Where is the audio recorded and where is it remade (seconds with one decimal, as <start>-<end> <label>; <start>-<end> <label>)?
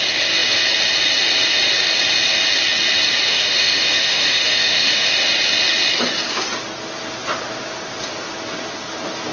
0.0-3.3 recorded; 3.3-5.1 remade; 5.1-9.3 recorded